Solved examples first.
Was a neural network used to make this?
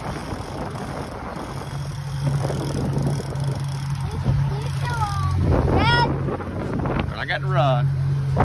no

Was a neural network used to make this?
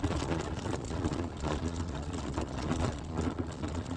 yes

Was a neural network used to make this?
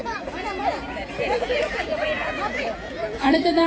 yes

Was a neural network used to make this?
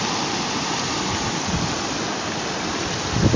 no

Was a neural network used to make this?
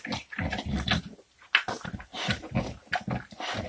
no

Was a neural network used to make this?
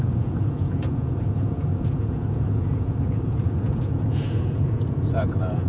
yes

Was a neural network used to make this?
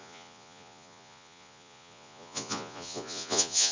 yes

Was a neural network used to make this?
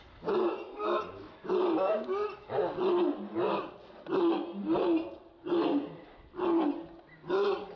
no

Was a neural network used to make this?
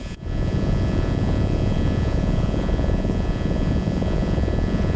yes